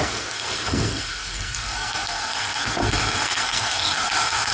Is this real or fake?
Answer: fake